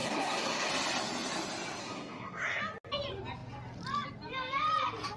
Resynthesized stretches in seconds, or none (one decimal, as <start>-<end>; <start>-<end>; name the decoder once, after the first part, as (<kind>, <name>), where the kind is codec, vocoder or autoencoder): 0.0-0.7 (codec, SNAC); 1.8-2.6